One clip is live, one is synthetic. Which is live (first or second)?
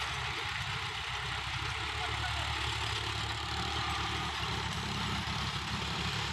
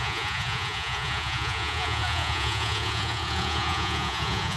first